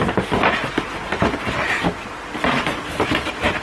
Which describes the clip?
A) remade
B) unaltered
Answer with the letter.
B